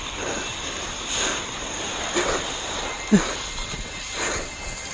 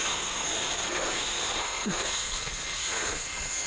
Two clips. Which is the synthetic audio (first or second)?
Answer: second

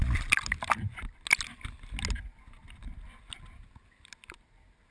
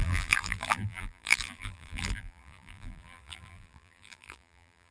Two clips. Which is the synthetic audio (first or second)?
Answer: second